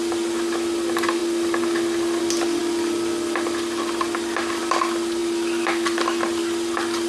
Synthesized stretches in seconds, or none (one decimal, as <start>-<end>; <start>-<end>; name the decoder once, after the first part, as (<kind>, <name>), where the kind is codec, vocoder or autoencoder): none